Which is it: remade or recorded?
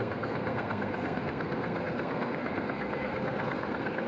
remade